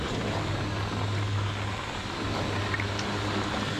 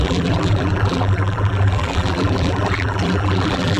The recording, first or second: first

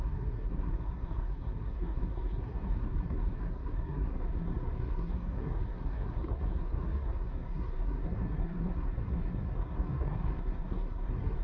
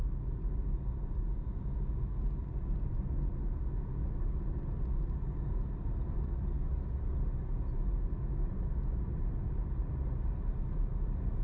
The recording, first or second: second